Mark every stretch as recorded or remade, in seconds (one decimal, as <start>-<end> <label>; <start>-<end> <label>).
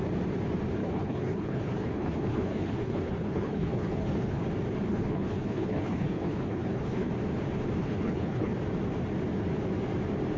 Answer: 0.0-0.8 recorded; 0.8-4.4 remade; 4.4-4.9 recorded; 4.9-7.1 remade; 7.1-7.8 recorded; 7.8-8.5 remade; 8.5-10.4 recorded